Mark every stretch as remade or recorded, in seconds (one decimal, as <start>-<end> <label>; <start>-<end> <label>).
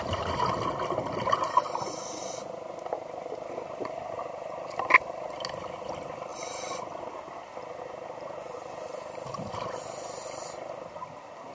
0.0-11.5 recorded